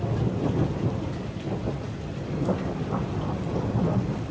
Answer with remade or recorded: recorded